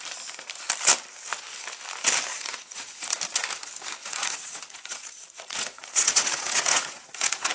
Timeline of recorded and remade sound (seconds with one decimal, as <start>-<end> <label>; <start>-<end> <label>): 0.0-2.3 recorded; 2.3-3.2 remade; 3.2-4.0 recorded; 4.0-7.5 remade